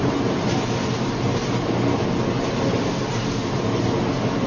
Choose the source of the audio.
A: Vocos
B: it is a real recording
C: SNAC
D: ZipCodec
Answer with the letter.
B